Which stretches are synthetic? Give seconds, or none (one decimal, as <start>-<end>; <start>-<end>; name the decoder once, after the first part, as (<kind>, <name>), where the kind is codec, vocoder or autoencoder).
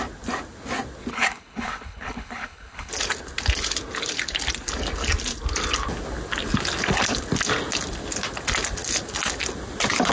1.1-2.9 (codec, HILCodec)